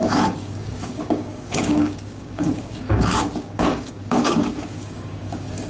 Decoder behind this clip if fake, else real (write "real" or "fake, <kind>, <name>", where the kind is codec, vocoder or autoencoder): fake, codec, DAC